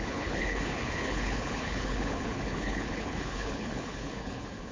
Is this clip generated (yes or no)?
yes